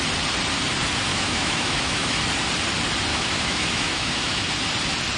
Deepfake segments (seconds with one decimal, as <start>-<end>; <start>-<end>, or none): 1.1-2.2; 3.1-4.5